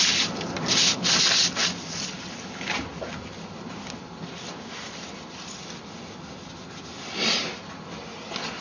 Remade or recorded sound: recorded